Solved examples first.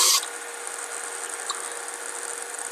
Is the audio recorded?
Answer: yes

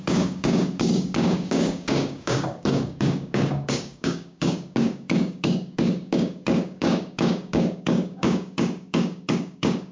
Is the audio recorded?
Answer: no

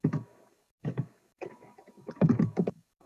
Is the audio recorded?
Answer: no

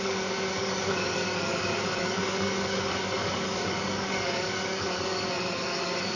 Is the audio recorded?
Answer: no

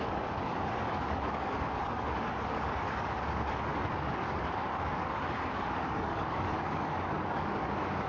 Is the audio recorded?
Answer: no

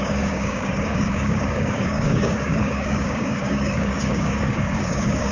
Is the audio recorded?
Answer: no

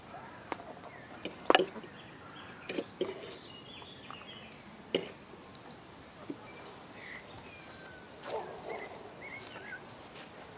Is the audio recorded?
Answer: yes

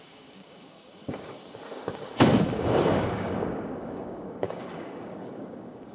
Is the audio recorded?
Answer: no